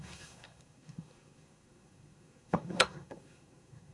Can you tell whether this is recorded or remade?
remade